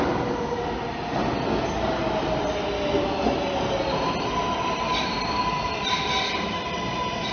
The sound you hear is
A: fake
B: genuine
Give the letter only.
B